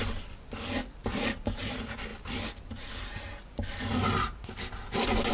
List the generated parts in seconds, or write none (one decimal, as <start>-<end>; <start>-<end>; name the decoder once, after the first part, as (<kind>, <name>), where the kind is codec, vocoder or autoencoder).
1.0-1.7 (vocoder, BigVGAN v2)